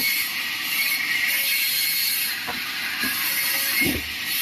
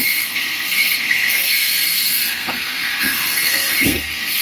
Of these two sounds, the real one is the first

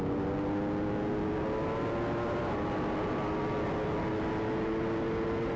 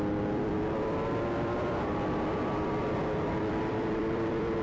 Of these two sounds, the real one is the first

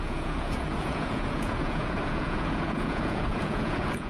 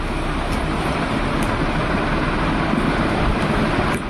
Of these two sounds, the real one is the second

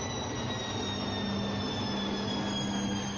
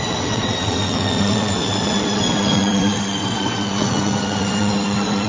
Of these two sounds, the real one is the first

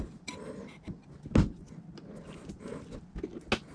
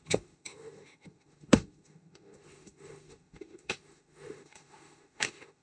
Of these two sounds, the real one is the first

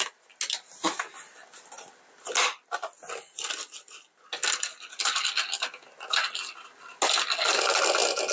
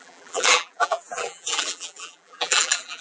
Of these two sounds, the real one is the first